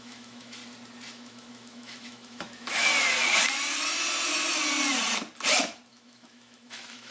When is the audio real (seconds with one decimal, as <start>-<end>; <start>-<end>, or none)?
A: 0.6-1.1; 2.9-5.9

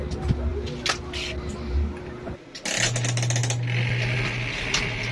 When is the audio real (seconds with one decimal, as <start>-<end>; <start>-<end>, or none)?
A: 0.0-5.1

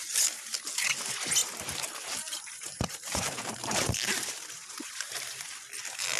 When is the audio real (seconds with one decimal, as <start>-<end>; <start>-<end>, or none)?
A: 0.0-1.4; 5.1-6.2

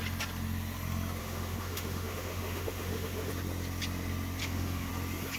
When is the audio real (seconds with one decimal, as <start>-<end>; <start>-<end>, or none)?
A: 0.0-1.2; 3.3-4.4; 4.9-5.4

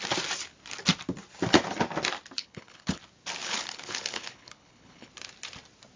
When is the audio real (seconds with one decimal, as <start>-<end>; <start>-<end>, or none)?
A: 0.0-2.4; 3.0-3.4; 5.1-6.0

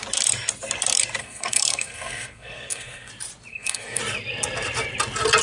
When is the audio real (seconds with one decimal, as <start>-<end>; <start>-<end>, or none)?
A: 0.0-1.2; 3.1-3.5; 4.0-5.4